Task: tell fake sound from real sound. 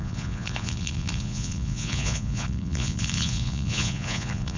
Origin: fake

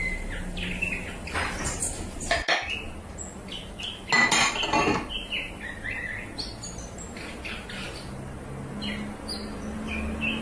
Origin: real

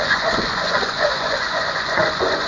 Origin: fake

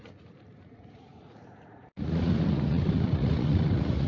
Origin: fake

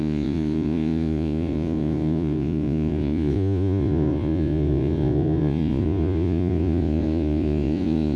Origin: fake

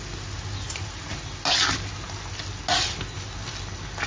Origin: real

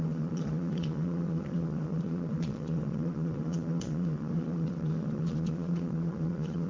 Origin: fake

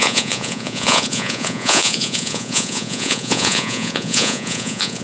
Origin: fake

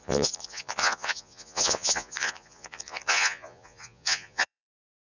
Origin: fake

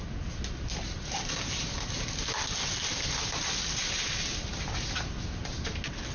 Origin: real